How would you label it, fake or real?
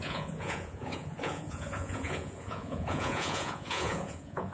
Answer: fake